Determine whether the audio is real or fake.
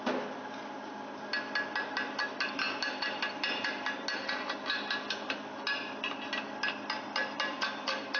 real